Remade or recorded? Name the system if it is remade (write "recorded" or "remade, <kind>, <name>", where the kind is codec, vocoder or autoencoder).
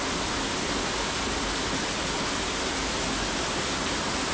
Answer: recorded